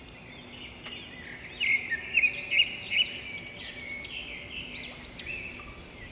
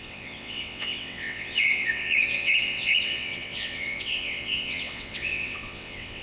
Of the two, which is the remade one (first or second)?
second